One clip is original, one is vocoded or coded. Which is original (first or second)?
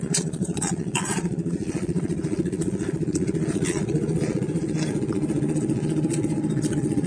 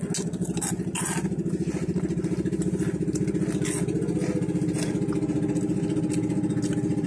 second